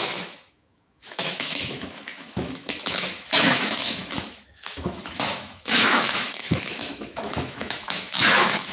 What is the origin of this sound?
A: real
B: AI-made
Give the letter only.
B